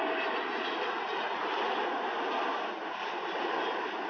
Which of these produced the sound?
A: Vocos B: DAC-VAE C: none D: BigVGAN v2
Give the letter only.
C